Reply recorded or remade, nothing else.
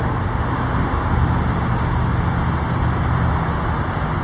recorded